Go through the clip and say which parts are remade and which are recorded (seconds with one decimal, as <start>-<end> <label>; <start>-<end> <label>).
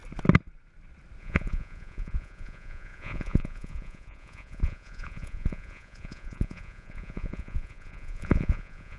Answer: 0.0-1.2 recorded; 1.2-9.0 remade